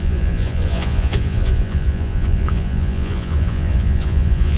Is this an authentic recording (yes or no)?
no